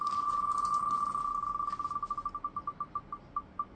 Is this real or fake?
real